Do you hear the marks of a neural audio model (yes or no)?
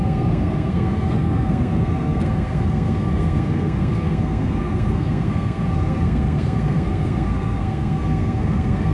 yes